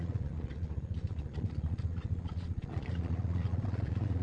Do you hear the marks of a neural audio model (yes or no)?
yes